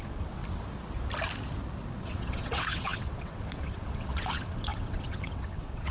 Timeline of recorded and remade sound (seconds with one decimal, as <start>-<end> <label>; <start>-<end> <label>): 0.0-0.4 remade; 0.4-2.0 recorded; 2.0-5.9 remade